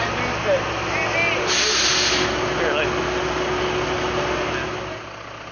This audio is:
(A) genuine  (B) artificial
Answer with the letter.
A